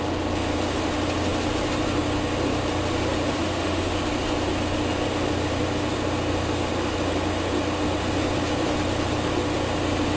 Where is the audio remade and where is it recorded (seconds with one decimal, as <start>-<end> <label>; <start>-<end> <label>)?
0.0-3.4 recorded; 3.4-3.9 remade; 3.9-10.2 recorded